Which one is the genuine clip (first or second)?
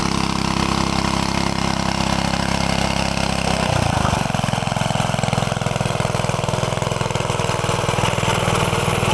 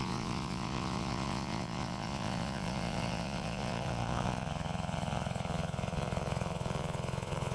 first